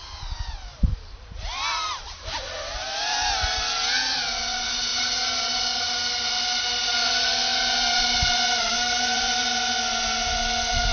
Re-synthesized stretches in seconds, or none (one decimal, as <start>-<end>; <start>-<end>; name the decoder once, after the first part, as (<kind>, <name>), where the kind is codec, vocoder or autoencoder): 0.7-3.7 (vocoder, BigVGAN v2); 4.9-5.5; 7.5-9.5